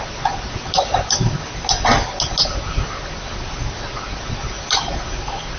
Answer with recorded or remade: recorded